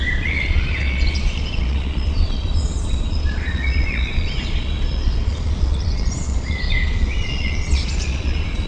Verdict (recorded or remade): remade